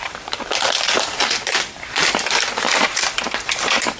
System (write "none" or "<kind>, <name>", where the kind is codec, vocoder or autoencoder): vocoder, BigVGAN v2